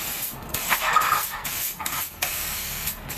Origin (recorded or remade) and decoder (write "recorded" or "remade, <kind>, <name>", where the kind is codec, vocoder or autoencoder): remade, codec, SNAC